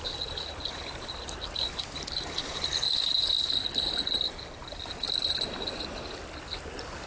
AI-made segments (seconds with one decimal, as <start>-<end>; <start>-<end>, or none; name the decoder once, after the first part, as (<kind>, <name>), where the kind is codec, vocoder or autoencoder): none